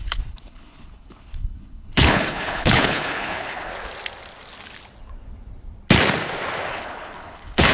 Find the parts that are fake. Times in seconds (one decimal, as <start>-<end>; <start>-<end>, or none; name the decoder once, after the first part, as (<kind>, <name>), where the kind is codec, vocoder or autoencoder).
0.0-3.7 (codec, HILCodec); 6.7-7.7